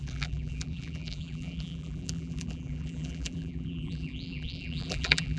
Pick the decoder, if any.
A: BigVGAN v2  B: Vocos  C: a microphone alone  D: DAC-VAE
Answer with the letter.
A